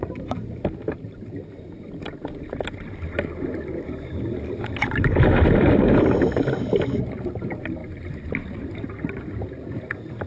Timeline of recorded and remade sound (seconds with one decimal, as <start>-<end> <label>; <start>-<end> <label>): 0.0-1.5 remade; 1.5-10.3 recorded